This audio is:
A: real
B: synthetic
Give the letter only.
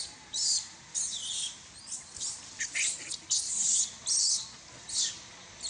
A